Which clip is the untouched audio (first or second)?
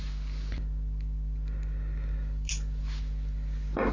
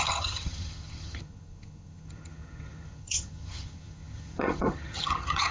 first